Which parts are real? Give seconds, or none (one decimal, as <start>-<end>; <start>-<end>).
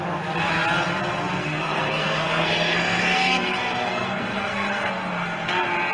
0.0-1.4; 4.9-5.9